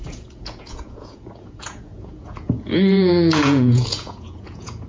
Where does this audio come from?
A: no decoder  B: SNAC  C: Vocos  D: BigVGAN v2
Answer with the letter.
C